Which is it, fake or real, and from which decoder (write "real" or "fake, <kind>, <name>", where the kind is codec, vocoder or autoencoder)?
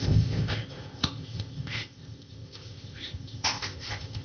fake, codec, ZipCodec